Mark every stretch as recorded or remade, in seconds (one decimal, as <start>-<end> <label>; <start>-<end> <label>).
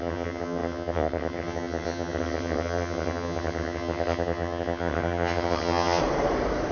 0.0-6.0 remade; 6.0-6.7 recorded